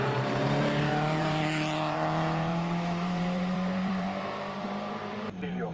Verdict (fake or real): fake